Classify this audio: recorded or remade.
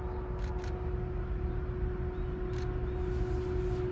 recorded